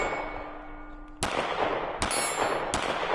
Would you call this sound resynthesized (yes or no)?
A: no